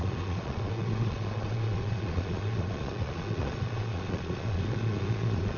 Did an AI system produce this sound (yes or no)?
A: yes